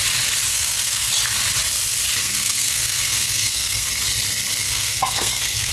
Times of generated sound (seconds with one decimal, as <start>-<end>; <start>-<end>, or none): 0.5-1.1; 2.2-3.9; 4.6-5.7

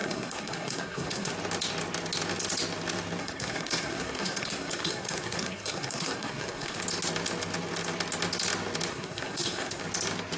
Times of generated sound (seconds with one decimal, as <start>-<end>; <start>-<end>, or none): 0.0-1.3; 3.2-6.8; 8.9-9.8

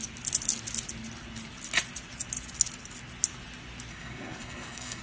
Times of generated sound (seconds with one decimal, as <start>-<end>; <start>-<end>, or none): 3.9-5.0